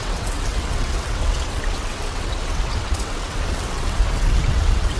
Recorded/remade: remade